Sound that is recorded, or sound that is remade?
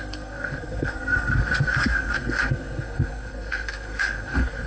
remade